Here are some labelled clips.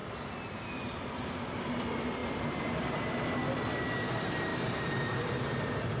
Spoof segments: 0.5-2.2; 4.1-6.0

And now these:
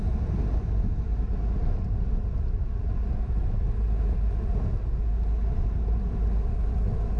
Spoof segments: none

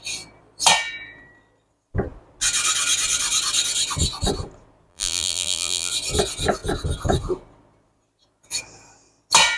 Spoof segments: 4.9-5.9

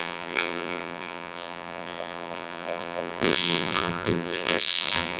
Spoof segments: 0.0-5.2

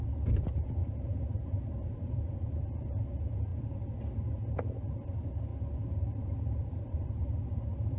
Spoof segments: 0.8-2.8; 5.5-7.1